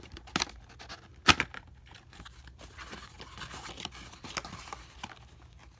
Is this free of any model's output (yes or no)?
yes